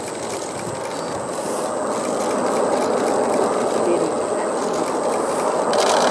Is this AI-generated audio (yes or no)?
no